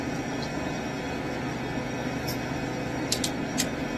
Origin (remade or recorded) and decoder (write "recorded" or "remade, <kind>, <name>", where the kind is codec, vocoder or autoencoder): recorded